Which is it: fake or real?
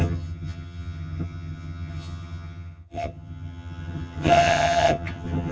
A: fake